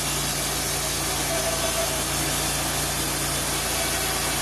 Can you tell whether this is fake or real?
real